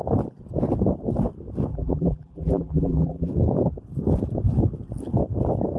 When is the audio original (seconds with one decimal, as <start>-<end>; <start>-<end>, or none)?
0.0-1.7; 3.3-5.8